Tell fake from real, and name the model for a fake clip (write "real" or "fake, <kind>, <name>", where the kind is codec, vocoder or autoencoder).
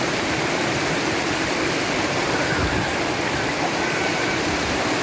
real